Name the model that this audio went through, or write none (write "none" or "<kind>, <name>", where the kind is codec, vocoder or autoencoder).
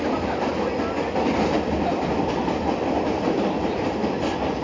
none